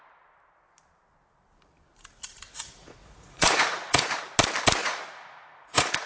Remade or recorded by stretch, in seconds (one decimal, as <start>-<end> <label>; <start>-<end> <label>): 0.0-2.5 recorded; 2.5-4.2 remade; 4.2-4.8 recorded; 4.8-6.1 remade